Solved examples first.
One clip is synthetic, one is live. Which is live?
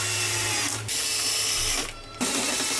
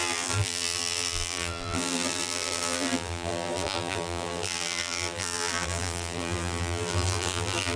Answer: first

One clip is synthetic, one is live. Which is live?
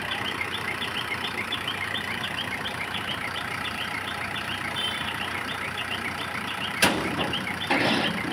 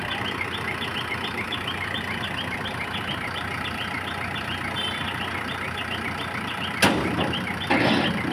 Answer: second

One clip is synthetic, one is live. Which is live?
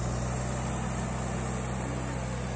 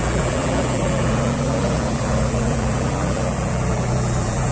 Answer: first